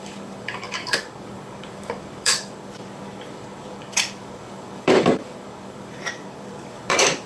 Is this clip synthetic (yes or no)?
yes